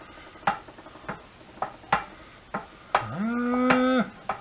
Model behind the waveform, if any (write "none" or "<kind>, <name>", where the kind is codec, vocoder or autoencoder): none